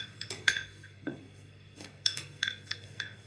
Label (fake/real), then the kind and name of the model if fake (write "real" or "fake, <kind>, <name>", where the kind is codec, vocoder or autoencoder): fake, codec, SNAC